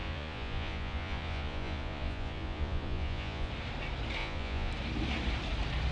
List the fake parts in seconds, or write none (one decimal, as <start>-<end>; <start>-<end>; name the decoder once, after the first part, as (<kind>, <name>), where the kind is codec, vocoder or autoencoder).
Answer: 0.0-3.5 (vocoder, Vocos); 4.2-4.7